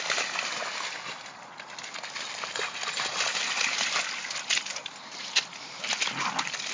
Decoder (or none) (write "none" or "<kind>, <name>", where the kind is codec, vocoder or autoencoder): none